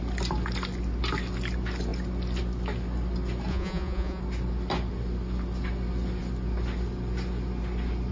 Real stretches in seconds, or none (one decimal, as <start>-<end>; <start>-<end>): 0.0-3.5; 4.2-8.1